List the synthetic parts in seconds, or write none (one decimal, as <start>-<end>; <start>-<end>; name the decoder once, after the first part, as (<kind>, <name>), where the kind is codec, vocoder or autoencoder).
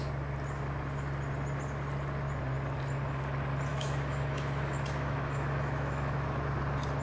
3.7-6.6 (autoencoder, DAC-VAE)